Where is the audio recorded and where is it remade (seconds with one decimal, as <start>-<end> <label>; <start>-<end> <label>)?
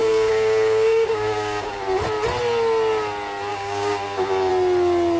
0.0-1.8 remade; 1.8-3.5 recorded; 3.5-4.5 remade; 4.5-5.2 recorded